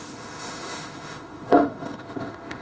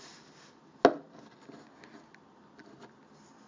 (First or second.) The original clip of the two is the second